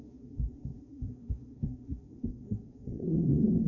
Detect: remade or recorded remade